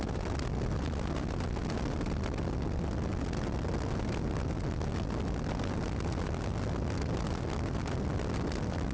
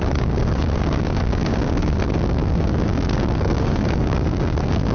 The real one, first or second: first